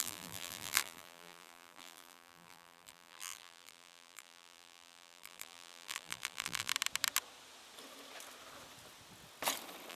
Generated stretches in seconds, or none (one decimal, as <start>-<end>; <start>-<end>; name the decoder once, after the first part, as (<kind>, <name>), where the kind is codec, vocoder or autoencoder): 0.0-6.7 (vocoder, BigVGAN v2)